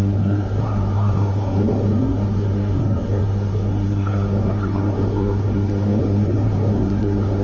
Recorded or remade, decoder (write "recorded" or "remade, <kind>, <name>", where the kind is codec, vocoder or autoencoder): remade, codec, SNAC